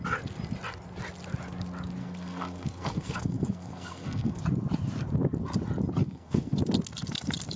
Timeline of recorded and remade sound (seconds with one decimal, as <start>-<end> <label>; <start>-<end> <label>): 0.0-2.0 recorded; 2.0-4.4 remade; 4.4-6.0 recorded; 6.0-6.6 remade; 6.6-7.6 recorded